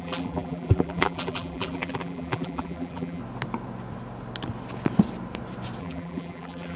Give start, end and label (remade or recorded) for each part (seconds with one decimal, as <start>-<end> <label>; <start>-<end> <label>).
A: 0.0-3.2 remade; 3.2-5.8 recorded; 5.8-6.8 remade